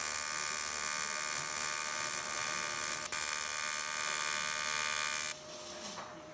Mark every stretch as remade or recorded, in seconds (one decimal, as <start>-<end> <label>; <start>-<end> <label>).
0.0-1.8 recorded; 1.8-4.2 remade; 4.2-6.3 recorded